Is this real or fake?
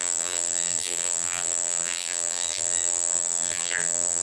fake